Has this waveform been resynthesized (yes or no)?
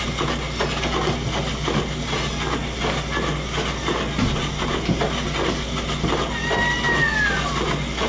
no